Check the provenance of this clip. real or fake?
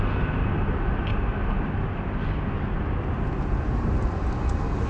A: real